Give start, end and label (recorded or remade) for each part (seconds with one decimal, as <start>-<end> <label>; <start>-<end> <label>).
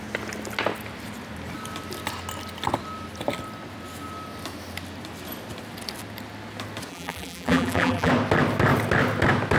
0.0-6.9 recorded; 6.9-8.1 remade; 8.1-9.6 recorded